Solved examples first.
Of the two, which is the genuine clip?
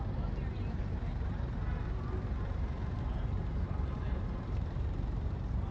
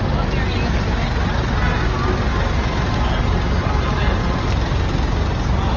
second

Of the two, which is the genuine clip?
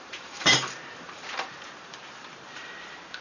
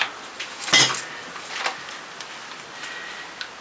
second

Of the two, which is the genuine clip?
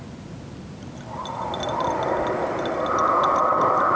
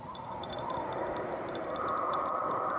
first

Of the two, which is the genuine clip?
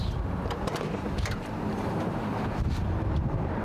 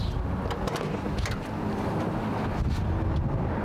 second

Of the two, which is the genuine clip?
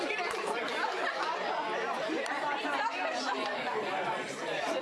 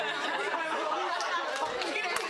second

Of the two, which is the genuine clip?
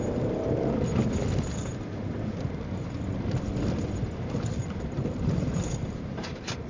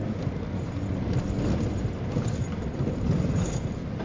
second